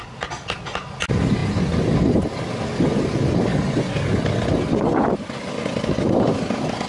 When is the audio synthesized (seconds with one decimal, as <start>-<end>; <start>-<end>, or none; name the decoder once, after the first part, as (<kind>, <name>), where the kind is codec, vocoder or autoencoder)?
none